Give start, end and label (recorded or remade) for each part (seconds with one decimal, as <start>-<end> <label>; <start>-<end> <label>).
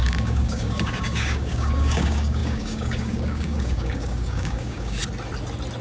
0.0-5.0 remade; 5.0-5.8 recorded